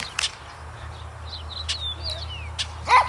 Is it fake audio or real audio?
real